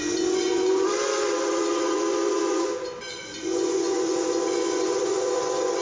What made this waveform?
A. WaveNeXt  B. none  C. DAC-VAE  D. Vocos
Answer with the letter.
D